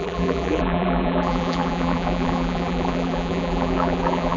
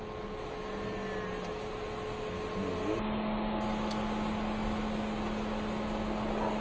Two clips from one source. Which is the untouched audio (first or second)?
second